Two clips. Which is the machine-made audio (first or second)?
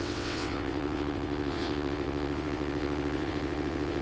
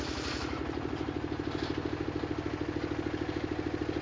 first